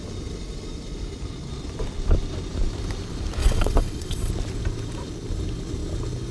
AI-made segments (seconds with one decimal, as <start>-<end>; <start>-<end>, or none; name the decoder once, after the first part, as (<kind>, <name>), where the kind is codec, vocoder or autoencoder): 3.4-4.3 (vocoder, WaveNeXt)